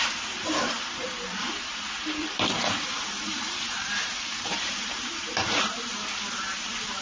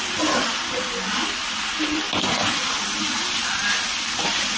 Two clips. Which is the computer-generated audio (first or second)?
first